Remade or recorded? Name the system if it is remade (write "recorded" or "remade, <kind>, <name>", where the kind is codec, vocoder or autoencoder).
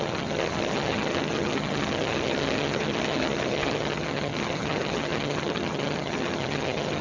remade, vocoder, HiFi-GAN